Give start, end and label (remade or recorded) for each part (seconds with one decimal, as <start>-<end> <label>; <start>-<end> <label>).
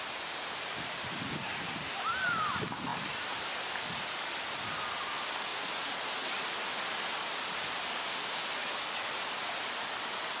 0.0-5.5 remade; 5.5-10.4 recorded